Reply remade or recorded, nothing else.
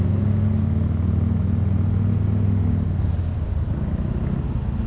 recorded